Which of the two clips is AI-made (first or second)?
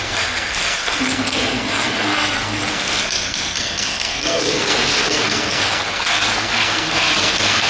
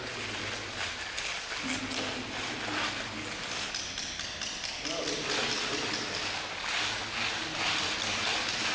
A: first